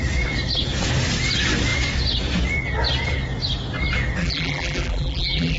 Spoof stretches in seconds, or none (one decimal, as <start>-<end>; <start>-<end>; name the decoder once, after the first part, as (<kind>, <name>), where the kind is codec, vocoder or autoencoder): 4.2-5.6 (vocoder, BigVGAN v2)

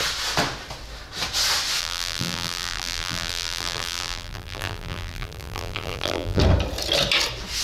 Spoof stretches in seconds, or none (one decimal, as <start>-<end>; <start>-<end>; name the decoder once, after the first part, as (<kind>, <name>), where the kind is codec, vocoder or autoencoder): 1.8-6.4 (vocoder, BigVGAN v2)

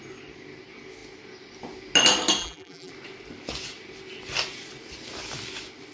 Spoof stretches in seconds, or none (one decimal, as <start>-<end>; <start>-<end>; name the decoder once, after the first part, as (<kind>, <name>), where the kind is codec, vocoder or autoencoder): 2.4-2.9 (vocoder, BigVGAN v2)

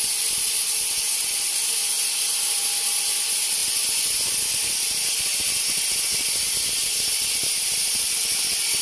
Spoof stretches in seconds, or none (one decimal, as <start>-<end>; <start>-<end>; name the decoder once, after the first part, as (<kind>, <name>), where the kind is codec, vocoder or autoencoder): none

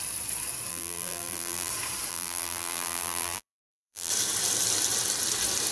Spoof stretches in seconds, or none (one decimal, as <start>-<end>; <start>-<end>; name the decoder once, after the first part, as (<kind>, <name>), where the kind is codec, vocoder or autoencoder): 0.7-1.7 (vocoder, BigVGAN v2); 2.1-4.1

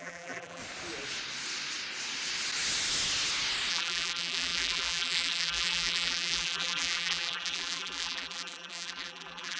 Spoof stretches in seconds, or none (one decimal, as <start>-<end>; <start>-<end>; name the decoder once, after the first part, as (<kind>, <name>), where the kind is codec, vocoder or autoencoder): 0.0-0.6 (vocoder, BigVGAN v2); 3.7-9.6

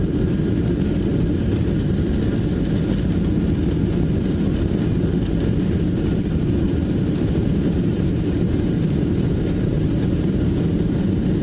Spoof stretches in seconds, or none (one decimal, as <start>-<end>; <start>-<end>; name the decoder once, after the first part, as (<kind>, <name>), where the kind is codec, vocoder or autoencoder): 0.0-1.5 (vocoder, BigVGAN v2); 5.6-11.4

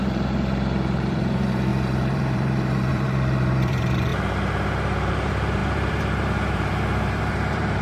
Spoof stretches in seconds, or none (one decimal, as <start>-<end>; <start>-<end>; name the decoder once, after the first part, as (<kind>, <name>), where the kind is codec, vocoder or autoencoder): 0.0-4.1 (vocoder, BigVGAN v2); 5.1-7.8